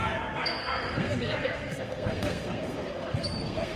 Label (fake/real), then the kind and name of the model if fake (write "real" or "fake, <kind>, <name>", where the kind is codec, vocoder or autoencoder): fake, codec, SNAC